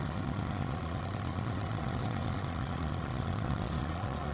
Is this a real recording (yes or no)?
no